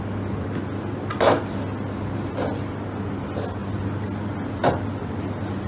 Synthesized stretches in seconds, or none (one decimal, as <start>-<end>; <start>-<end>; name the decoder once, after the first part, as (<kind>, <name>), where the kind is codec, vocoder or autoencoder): none